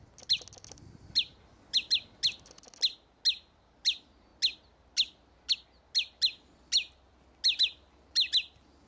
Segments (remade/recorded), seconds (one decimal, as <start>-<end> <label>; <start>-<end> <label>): 0.0-8.9 recorded

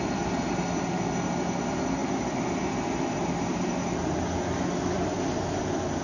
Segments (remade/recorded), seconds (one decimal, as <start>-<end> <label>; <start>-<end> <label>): 0.0-6.0 recorded

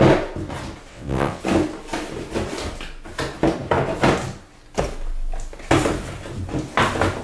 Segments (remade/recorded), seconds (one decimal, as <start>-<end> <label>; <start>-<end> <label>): 0.0-0.9 recorded; 0.9-1.4 remade; 1.4-7.2 recorded

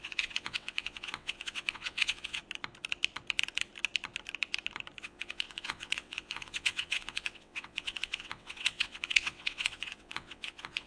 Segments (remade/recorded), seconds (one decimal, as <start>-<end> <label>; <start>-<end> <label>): 0.0-2.4 remade; 2.4-5.0 recorded; 5.0-10.9 remade

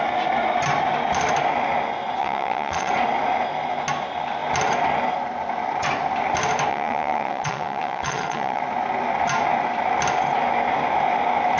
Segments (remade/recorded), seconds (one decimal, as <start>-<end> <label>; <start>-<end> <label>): 0.0-2.2 recorded; 2.2-2.9 remade; 2.9-6.7 recorded; 6.7-8.6 remade; 8.6-11.6 recorded

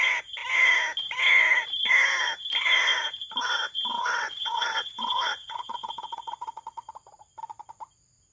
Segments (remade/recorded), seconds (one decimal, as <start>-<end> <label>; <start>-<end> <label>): 0.0-3.9 recorded; 3.9-6.9 remade; 6.9-8.3 recorded

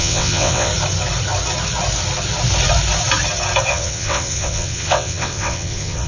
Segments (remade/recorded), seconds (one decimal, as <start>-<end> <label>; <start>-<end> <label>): 0.0-0.7 remade; 0.7-3.7 recorded; 3.7-6.1 remade

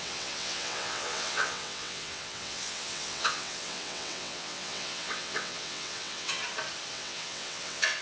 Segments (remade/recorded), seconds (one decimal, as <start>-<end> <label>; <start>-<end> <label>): 0.0-6.4 remade; 6.4-6.9 recorded; 6.9-8.0 remade